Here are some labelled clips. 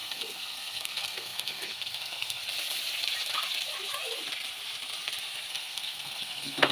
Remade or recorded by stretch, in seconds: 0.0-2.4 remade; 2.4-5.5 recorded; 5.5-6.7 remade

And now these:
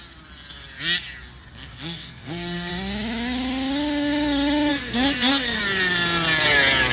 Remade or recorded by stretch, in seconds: 0.0-1.5 recorded; 1.5-2.7 remade; 2.7-4.7 recorded; 4.7-5.6 remade; 5.6-6.9 recorded

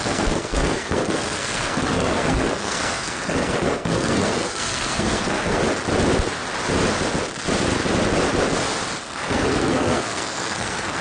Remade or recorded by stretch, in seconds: 0.0-5.6 remade; 5.6-9.0 recorded; 9.0-11.0 remade

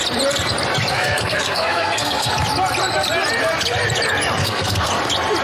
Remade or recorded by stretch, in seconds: 0.0-0.9 recorded; 0.9-2.3 remade; 2.3-4.4 recorded; 4.4-4.9 remade; 4.9-5.4 recorded